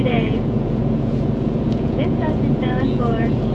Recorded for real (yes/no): no